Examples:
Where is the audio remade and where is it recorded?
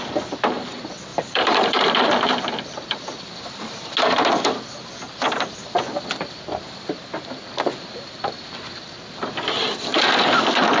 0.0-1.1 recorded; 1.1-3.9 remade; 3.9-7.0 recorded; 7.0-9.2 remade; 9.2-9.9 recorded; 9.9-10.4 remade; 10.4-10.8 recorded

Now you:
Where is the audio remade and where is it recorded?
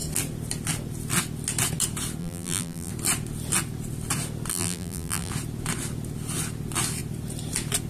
0.0-2.2 recorded; 2.2-2.9 remade; 2.9-4.5 recorded; 4.5-5.3 remade; 5.3-7.9 recorded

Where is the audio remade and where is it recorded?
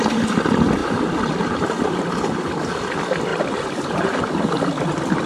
0.0-3.3 recorded; 3.3-4.2 remade; 4.2-5.3 recorded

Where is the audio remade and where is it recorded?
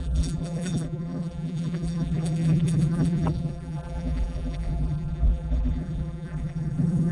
0.0-7.1 remade